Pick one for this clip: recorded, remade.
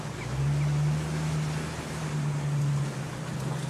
recorded